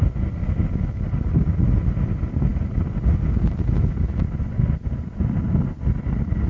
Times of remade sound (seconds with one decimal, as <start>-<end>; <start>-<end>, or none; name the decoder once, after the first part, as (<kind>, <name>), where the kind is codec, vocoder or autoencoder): none